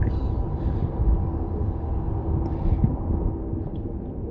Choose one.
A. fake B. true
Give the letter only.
B